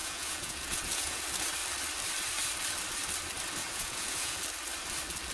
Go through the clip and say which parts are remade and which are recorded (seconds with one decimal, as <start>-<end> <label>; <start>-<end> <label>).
0.0-1.2 remade; 1.2-3.6 recorded; 3.6-4.4 remade; 4.4-5.3 recorded